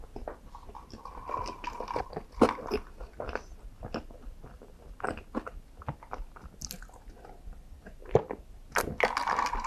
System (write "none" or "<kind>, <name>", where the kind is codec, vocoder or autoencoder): none